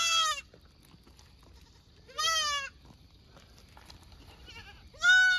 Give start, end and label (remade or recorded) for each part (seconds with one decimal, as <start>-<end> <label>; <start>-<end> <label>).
0.0-5.4 recorded

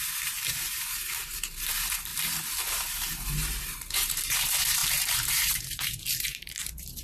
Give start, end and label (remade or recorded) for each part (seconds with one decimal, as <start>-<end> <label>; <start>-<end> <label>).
0.0-2.1 remade; 2.1-2.7 recorded; 2.7-7.0 remade

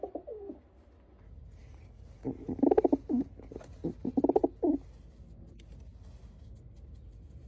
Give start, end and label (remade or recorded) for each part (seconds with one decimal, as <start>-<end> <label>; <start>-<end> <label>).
0.0-7.5 recorded

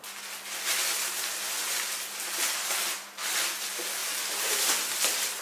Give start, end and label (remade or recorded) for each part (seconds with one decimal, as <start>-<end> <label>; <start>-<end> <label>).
0.0-5.4 recorded

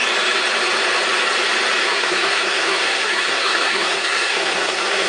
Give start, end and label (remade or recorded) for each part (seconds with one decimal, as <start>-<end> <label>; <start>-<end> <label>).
0.0-1.8 recorded; 1.8-5.1 remade

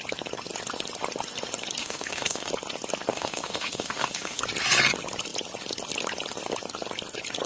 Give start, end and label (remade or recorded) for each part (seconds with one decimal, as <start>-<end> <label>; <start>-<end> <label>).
0.0-1.8 recorded; 1.8-2.5 remade; 2.5-3.1 recorded; 3.1-4.4 remade; 4.4-7.5 recorded